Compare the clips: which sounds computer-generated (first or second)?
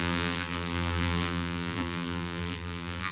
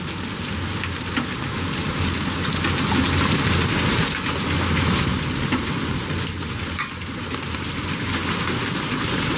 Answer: first